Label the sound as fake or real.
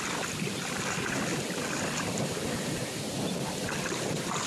real